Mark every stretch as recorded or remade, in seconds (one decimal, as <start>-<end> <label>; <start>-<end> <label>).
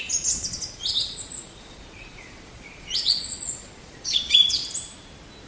0.0-4.6 remade; 4.6-5.5 recorded